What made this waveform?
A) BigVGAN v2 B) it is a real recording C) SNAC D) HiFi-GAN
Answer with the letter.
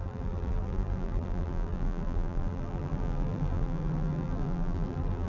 A